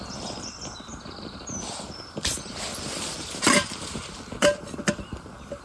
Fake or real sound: fake